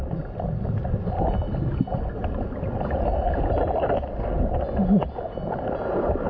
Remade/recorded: recorded